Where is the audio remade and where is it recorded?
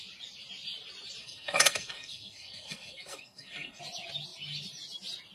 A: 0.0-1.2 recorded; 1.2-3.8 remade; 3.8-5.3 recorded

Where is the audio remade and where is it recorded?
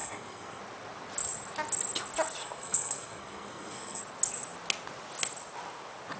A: 0.0-0.6 remade; 0.6-2.4 recorded; 2.4-4.0 remade; 4.0-6.2 recorded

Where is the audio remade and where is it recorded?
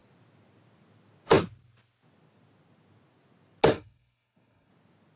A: 0.0-3.7 recorded; 3.7-4.7 remade; 4.7-5.2 recorded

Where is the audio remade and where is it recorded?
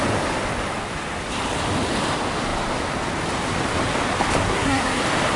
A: 0.0-4.4 recorded; 4.4-5.0 remade; 5.0-5.4 recorded